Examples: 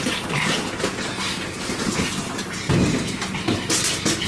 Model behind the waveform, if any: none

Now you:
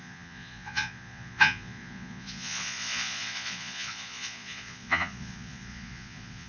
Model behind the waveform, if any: vocoder, Vocos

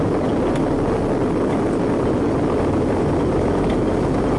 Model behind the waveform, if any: none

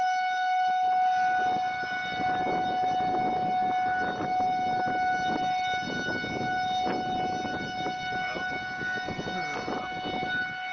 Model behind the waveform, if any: none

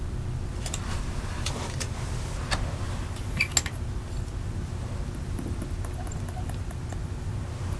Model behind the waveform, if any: none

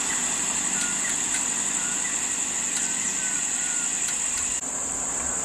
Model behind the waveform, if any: none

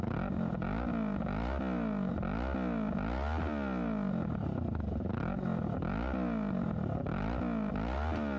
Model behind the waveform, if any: none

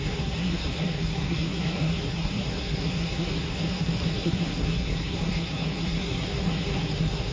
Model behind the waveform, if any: codec, SNAC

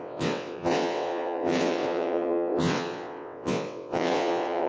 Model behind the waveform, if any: vocoder, WaveNeXt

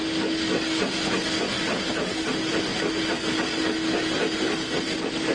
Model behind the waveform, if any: none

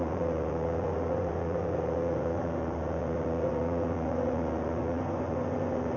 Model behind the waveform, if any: vocoder, Vocos